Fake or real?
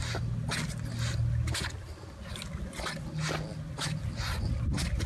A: real